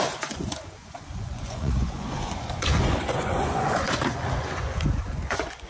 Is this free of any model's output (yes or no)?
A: no